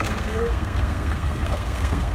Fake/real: fake